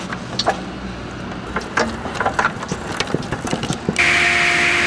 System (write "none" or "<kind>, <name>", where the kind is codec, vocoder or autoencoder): none